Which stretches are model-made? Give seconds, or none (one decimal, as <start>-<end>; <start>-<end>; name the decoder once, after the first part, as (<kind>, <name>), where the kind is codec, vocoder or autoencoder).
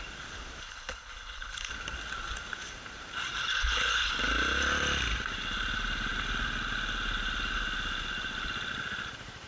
0.6-1.7 (codec, HILCodec); 3.5-4.1